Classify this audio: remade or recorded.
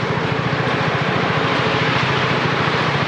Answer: remade